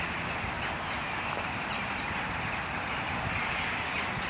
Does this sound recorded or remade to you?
recorded